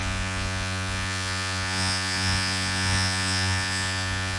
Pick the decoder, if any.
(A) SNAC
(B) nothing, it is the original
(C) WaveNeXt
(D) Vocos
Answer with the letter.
D